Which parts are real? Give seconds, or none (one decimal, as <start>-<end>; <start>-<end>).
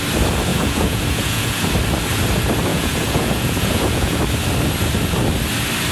0.0-0.5; 1.6-2.7; 4.2-5.9